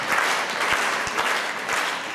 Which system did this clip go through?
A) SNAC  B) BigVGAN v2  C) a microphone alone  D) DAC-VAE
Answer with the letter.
C